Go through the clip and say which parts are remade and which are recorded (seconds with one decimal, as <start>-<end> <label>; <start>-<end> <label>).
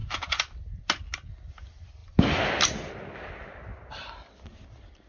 0.0-5.1 recorded